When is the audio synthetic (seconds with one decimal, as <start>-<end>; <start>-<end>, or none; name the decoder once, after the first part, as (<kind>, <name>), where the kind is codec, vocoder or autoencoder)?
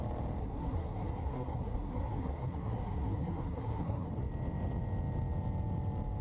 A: 0.4-4.1 (codec, SNAC)